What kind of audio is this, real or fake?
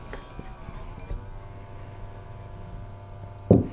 real